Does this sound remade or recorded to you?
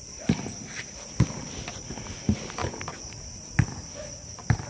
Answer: recorded